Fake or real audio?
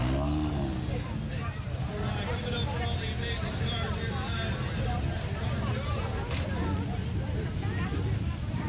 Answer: real